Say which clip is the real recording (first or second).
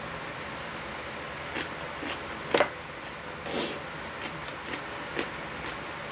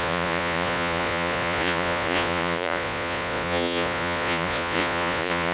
first